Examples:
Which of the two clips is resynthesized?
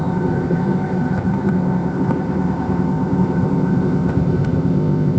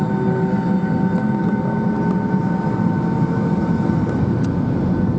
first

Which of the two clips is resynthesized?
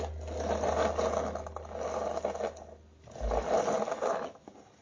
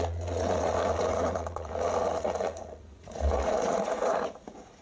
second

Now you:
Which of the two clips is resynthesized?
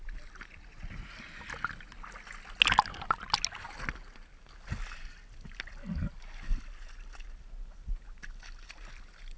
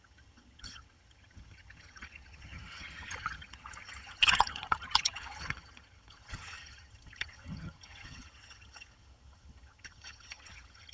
second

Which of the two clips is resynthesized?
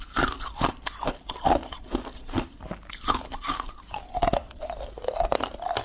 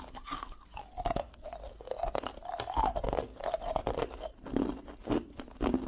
first